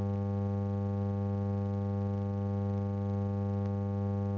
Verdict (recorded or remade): recorded